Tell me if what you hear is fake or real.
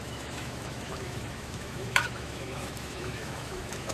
fake